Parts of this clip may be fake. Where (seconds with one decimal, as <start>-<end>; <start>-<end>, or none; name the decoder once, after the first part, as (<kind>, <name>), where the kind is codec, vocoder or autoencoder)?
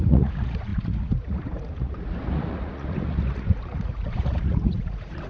0.0-5.3 (vocoder, Vocos)